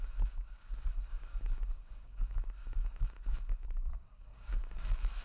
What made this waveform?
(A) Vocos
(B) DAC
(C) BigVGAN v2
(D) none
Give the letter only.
B